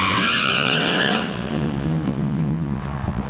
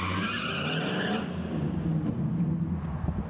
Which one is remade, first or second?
first